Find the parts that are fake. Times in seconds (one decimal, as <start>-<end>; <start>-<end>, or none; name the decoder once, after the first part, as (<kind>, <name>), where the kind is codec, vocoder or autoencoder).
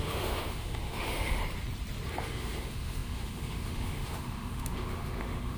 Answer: 0.0-1.4 (autoencoder, DAC-VAE); 2.2-5.6